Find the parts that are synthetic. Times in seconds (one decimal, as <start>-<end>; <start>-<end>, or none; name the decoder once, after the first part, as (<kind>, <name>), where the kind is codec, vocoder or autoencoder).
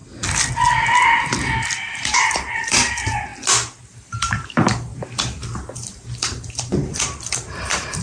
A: 1.9-3.3 (vocoder, BigVGAN v2); 3.9-4.9; 5.7-8.0